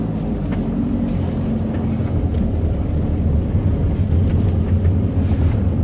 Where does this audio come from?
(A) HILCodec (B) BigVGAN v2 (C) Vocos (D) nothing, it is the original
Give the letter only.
B